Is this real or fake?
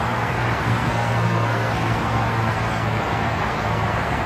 fake